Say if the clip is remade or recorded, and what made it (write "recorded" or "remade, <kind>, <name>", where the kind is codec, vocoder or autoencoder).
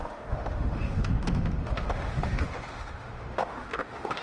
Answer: remade, autoencoder, DAC-VAE